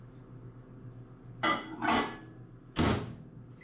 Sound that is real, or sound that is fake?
real